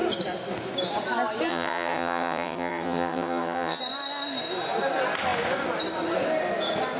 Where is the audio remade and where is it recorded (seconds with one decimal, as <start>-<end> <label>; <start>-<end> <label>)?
0.0-1.5 recorded; 1.5-3.8 remade; 3.8-7.0 recorded